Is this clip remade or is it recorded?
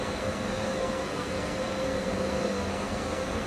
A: remade